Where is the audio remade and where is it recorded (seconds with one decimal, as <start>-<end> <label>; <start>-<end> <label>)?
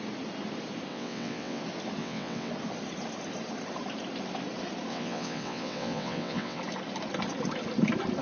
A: 0.0-0.9 recorded; 0.9-1.6 remade; 1.6-2.0 recorded; 2.0-2.5 remade; 2.5-4.9 recorded; 4.9-6.6 remade; 6.6-8.2 recorded